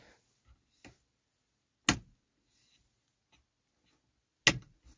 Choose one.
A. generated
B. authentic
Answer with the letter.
B